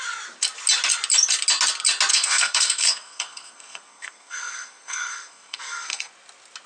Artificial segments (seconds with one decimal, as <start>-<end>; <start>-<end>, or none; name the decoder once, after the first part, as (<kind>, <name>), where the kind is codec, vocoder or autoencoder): 2.1-6.1 (codec, SNAC)